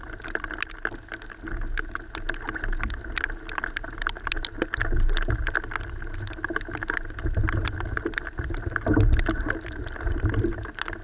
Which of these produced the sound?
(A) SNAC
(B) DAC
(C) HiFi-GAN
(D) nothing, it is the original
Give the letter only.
D